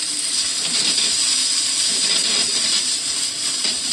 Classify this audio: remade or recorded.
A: remade